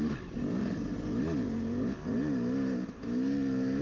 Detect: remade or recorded recorded